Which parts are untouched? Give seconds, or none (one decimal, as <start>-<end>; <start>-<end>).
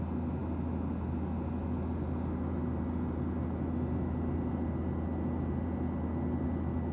0.0-6.9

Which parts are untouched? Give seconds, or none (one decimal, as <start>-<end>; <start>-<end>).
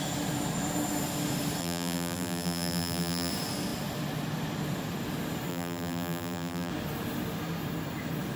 0.0-1.6; 3.3-5.5; 6.7-8.4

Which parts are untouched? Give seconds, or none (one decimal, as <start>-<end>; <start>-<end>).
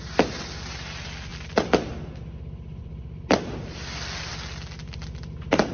0.0-1.3; 1.9-2.8; 4.3-5.7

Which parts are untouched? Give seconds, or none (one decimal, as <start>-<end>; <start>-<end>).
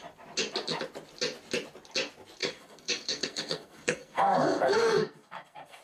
0.0-2.4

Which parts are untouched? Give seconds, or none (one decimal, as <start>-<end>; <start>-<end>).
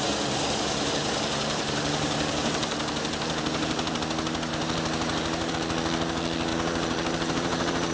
0.0-1.0; 4.0-4.5; 5.5-6.5